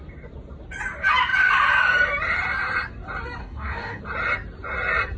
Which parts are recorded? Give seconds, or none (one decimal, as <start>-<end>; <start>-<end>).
0.0-3.4; 4.0-5.2